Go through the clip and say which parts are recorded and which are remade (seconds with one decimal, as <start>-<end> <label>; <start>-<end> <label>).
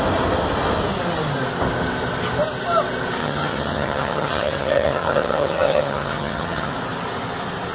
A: 0.0-3.2 recorded; 3.2-6.7 remade; 6.7-7.7 recorded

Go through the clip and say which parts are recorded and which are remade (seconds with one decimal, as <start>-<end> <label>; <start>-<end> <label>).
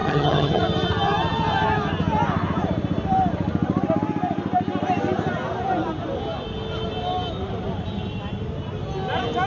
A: 0.0-0.6 remade; 0.6-9.5 recorded